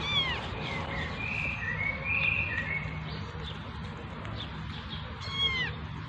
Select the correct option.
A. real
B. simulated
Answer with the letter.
A